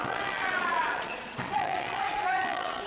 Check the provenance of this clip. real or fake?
fake